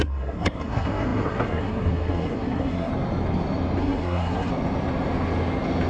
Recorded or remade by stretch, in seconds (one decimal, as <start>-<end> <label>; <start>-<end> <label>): 0.0-2.9 remade; 2.9-3.8 recorded; 3.8-4.5 remade; 4.5-5.9 recorded